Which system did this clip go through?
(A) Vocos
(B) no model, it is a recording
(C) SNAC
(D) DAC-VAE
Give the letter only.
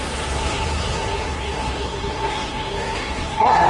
C